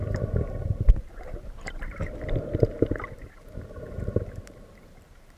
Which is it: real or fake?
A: fake